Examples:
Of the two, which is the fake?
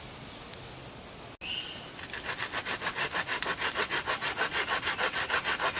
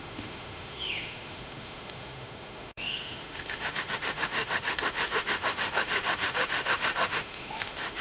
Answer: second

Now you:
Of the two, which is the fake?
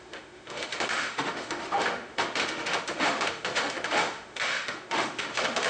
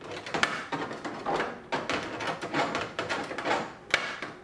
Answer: first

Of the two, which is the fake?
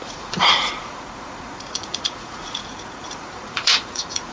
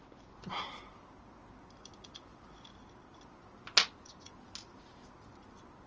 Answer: first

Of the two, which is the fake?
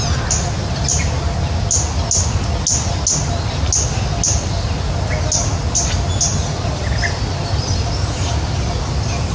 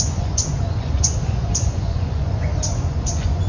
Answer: second